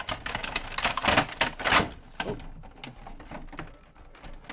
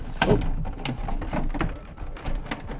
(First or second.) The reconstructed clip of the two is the second